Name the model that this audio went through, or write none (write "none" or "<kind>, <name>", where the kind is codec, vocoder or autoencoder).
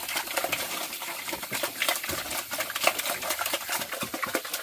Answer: none